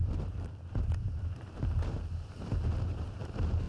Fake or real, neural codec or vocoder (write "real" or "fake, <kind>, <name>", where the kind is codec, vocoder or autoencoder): fake, vocoder, BigVGAN v2